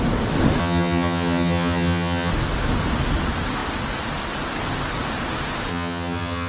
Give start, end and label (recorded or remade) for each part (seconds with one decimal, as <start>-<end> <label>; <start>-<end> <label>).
0.0-0.6 recorded; 0.6-2.3 remade; 2.3-5.7 recorded; 5.7-6.5 remade